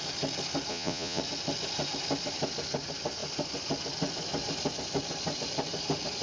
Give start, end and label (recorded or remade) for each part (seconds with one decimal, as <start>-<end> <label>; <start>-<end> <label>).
0.0-0.7 recorded; 0.7-1.2 remade; 1.2-6.2 recorded